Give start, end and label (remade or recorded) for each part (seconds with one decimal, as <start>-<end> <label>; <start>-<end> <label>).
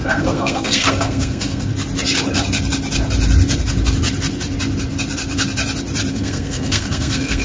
0.0-1.7 remade; 1.7-6.1 recorded; 6.1-7.4 remade